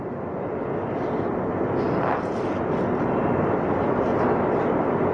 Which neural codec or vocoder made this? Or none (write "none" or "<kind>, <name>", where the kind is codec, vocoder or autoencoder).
none